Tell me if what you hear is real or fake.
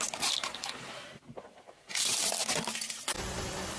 real